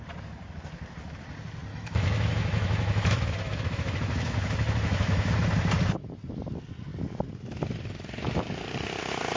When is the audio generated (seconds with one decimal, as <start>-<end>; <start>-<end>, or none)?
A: 1.7-5.3

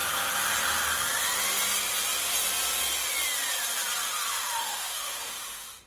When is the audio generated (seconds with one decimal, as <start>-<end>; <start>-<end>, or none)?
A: 4.6-5.9